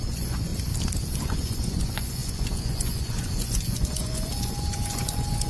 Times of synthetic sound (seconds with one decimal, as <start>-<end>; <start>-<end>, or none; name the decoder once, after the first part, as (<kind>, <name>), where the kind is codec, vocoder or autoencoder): 0.0-0.5 (vocoder, Vocos); 1.2-5.5